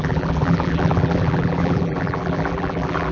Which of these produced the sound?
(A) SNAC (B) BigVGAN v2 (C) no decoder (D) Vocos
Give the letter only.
B